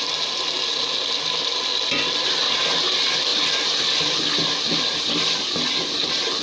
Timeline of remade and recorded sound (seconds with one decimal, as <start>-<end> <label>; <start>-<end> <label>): 0.0-6.4 recorded